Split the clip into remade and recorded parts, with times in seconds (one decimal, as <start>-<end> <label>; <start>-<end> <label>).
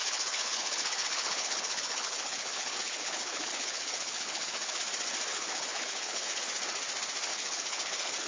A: 0.0-4.8 remade; 4.8-5.3 recorded; 5.3-6.4 remade; 6.4-7.3 recorded; 7.3-8.3 remade